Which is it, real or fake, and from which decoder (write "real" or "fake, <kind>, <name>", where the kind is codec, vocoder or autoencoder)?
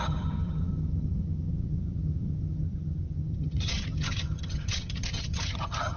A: fake, vocoder, HiFi-GAN